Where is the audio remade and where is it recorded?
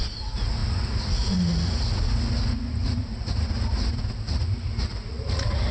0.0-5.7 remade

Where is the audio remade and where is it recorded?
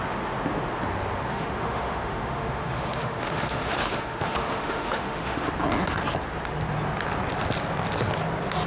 0.0-1.3 recorded; 1.3-5.5 remade; 5.5-8.7 recorded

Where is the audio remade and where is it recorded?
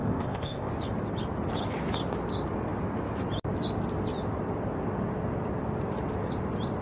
0.0-0.7 remade; 0.7-6.8 recorded